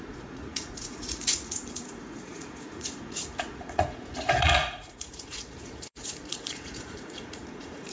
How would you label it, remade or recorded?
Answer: remade